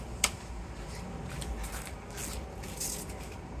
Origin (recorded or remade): recorded